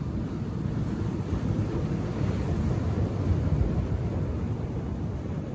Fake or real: fake